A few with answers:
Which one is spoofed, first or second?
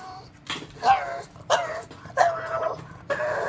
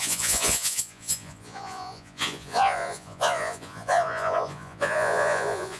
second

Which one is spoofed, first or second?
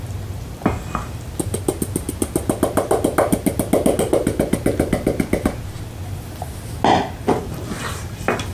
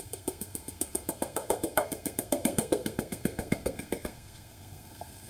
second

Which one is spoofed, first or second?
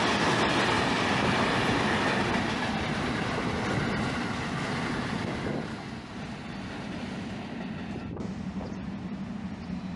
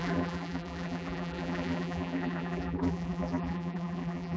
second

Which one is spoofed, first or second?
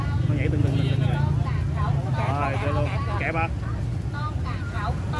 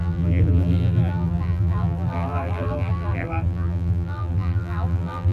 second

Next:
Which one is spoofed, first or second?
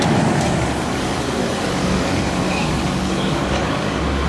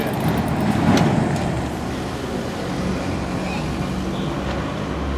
first